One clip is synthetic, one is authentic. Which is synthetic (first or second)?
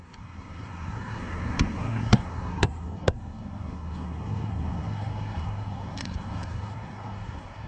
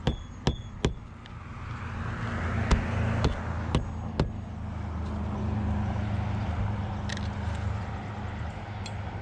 first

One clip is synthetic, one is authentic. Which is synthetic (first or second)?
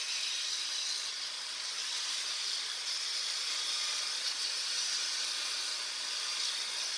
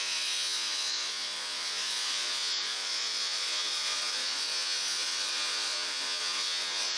second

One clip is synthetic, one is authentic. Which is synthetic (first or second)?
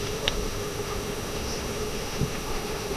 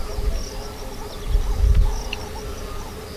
first